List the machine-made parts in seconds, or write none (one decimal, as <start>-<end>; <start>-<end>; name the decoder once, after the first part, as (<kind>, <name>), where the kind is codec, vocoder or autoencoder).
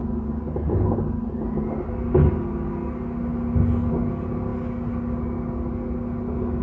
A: none